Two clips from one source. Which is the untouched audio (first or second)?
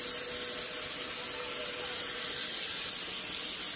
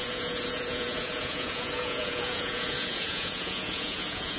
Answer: first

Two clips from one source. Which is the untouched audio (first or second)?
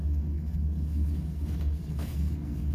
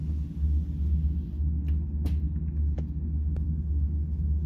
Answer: second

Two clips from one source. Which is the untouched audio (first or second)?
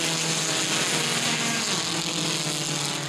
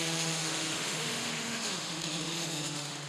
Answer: first